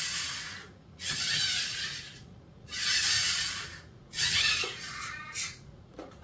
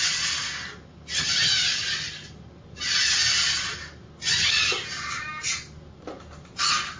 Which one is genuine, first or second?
second